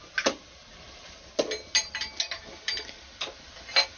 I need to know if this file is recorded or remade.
recorded